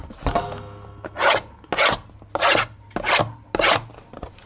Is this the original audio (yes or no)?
yes